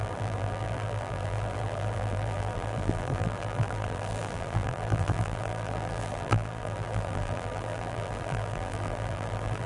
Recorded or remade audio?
remade